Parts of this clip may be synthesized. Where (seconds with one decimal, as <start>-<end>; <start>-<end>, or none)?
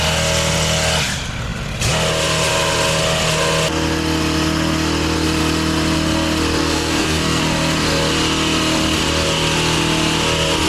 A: 6.6-7.4